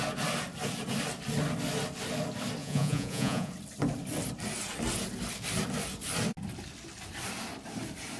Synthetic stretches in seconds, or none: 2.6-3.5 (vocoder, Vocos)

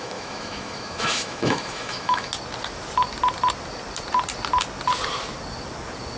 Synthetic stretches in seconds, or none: 0.0-2.3 (autoencoder, DAC-VAE)

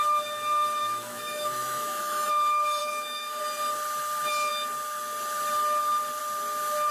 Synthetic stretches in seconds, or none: 0.8-2.3 (autoencoder, DAC-VAE); 2.8-3.4

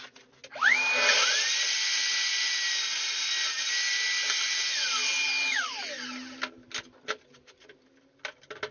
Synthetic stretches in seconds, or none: 1.1-1.9 (vocoder, BigVGAN v2); 2.3-3.0